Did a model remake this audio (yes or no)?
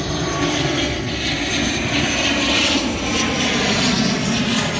no